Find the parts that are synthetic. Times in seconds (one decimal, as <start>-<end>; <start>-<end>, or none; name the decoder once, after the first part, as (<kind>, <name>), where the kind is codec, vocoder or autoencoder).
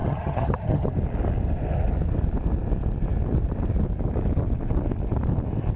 0.0-0.9 (vocoder, HiFi-GAN)